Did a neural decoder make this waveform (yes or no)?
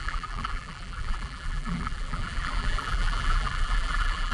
yes